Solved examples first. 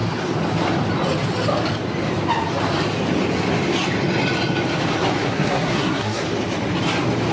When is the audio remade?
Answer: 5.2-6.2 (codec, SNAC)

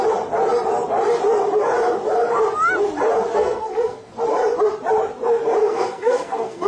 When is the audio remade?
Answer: 3.3-4.1 (codec, SNAC); 5.6-6.7

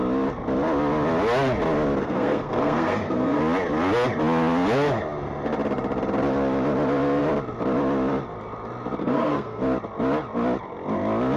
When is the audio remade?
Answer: 2.0-3.4 (codec, SNAC); 9.0-9.6

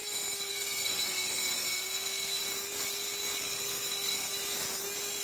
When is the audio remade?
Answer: 0.5-2.4 (codec, SNAC); 3.4-4.3

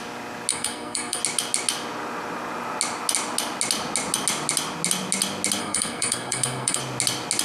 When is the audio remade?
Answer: 0.5-1.2 (codec, SNAC); 5.6-6.8

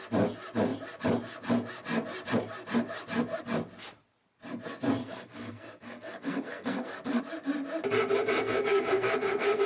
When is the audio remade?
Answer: 5.0-7.2 (codec, SNAC); 8.4-9.7

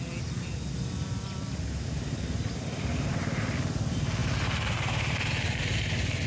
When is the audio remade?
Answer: none

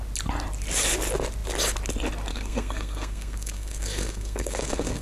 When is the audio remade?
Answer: 2.3-5.0 (codec, SNAC)